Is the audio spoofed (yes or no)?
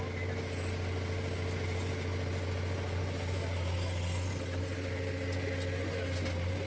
no